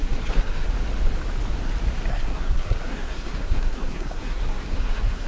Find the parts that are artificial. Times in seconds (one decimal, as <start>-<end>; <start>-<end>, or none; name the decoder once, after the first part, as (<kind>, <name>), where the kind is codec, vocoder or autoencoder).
0.0-0.7 (codec, SNAC); 2.1-5.3